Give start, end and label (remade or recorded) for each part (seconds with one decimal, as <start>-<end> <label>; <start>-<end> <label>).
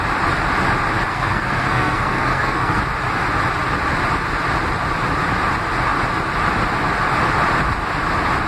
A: 0.0-1.1 recorded; 1.1-2.8 remade; 2.8-8.5 recorded